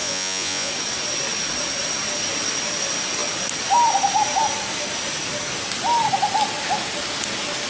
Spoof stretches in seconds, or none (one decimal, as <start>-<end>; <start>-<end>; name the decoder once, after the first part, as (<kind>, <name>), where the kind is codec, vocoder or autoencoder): 0.0-0.7 (vocoder, Vocos)